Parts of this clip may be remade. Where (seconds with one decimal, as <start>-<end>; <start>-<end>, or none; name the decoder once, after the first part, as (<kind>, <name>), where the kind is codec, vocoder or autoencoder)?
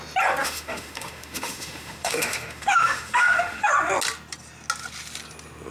0.4-3.7 (autoencoder, DAC-VAE)